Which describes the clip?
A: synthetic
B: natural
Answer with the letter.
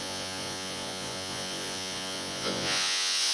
A